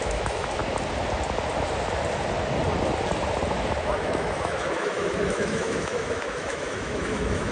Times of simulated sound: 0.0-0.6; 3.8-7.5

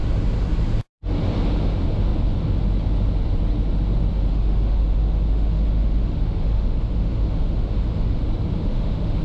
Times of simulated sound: 4.3-8.2; 8.6-9.2

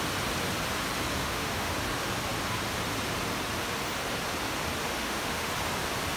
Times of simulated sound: 1.2-1.7; 4.9-5.5